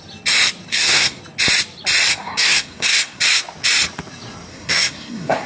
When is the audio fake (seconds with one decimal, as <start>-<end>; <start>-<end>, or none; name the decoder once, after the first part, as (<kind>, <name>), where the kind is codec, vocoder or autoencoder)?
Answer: 0.7-1.2 (codec, SNAC); 2.1-3.2; 4.5-5.5